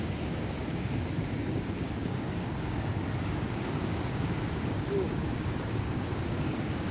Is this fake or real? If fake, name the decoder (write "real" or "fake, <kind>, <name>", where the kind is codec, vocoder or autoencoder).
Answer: fake, codec, DAC